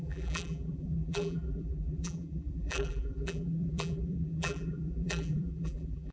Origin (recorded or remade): remade